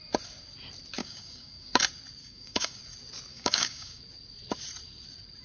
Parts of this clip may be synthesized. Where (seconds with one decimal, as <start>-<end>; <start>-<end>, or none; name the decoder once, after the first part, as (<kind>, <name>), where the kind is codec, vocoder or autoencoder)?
1.0-1.8 (codec, DAC); 2.2-2.8; 3.3-4.0

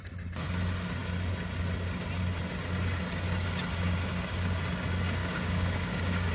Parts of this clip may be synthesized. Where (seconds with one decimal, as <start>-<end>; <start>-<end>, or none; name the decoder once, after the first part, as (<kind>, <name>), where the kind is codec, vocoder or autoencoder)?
5.2-6.3 (codec, DAC)

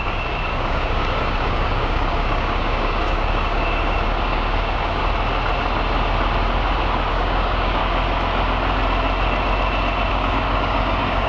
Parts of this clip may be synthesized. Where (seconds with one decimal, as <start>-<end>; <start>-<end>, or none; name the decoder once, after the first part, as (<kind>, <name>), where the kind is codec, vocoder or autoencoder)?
0.0-5.0 (codec, DAC); 7.1-7.8; 10.1-11.3

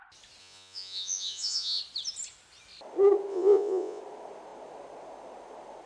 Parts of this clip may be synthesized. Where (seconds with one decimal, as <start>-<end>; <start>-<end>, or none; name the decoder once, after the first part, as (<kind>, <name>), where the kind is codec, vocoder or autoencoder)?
0.4-1.8 (vocoder, Vocos); 3.3-4.0

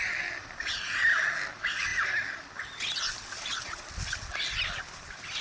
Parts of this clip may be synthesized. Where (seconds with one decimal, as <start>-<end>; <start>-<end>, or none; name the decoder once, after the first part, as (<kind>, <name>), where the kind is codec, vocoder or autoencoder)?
none